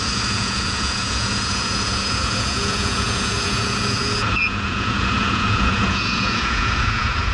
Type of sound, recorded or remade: remade